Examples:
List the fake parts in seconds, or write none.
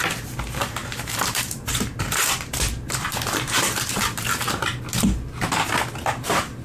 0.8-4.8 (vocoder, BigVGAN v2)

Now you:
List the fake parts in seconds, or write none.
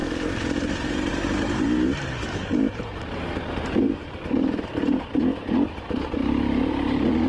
0.0-3.8 (vocoder, BigVGAN v2); 6.2-6.7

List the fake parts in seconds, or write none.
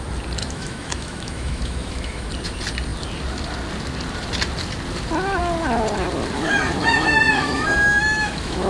0.4-2.3 (autoencoder, DAC-VAE); 6.8-8.7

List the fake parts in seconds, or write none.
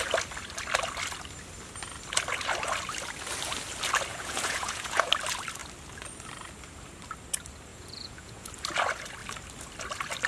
4.1-5.1 (vocoder, Vocos); 7.7-8.5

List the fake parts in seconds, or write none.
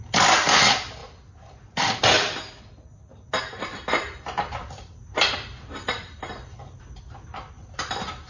1.0-2.0 (vocoder, BigVGAN v2); 3.7-7.0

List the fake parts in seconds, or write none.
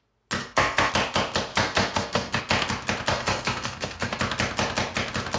0.4-0.9 (codec, SNAC); 1.5-2.4; 3.1-4.2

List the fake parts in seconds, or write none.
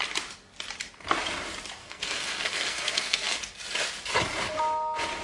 1.8-3.4 (codec, SNAC)